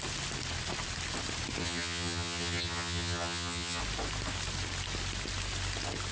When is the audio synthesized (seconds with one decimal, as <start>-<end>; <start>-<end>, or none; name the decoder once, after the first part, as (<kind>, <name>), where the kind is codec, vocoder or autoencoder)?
1.6-3.8 (vocoder, HiFi-GAN)